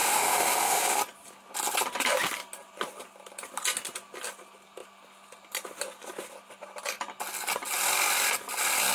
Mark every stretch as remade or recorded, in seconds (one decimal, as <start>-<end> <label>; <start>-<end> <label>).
0.0-1.0 remade; 1.0-8.9 recorded